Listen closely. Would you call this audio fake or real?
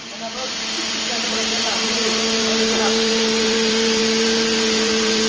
fake